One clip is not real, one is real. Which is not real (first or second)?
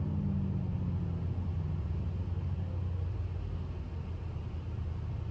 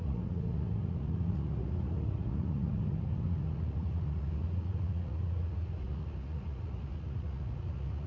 second